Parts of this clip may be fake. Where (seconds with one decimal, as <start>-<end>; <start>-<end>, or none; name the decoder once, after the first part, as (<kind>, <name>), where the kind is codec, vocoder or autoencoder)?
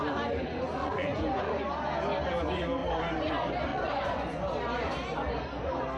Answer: 0.8-1.6 (vocoder, Vocos); 3.7-4.4